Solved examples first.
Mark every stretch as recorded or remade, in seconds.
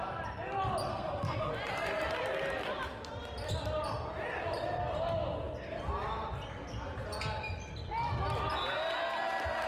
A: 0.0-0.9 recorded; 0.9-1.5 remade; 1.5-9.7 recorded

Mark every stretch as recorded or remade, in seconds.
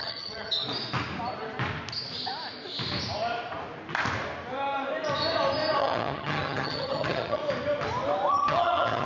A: 0.0-0.6 remade; 0.6-5.8 recorded; 5.8-7.4 remade; 7.4-8.3 recorded; 8.3-9.1 remade